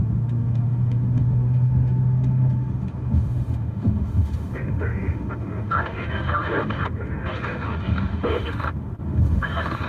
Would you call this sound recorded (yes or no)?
no